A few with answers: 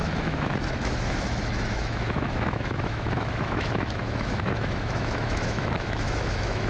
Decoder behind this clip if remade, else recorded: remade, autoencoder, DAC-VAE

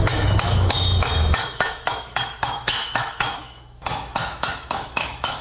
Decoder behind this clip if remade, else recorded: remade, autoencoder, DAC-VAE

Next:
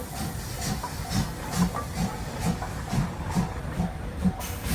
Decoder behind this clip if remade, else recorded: recorded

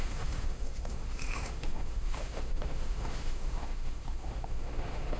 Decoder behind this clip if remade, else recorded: remade, autoencoder, DAC-VAE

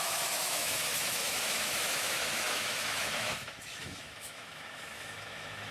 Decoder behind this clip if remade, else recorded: remade, autoencoder, DAC-VAE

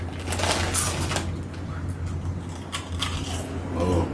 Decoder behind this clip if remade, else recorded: recorded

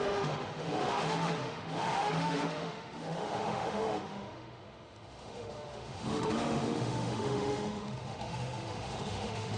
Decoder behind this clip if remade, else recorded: remade, autoencoder, DAC-VAE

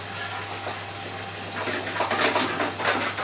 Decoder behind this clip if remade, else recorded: recorded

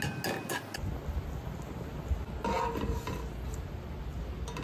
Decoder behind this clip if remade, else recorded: recorded